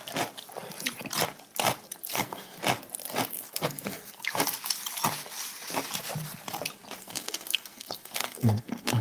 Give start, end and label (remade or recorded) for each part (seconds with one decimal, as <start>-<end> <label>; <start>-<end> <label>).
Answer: 0.0-2.1 recorded; 2.1-2.6 remade; 2.6-3.3 recorded; 3.3-4.2 remade; 4.2-7.0 recorded; 7.0-9.0 remade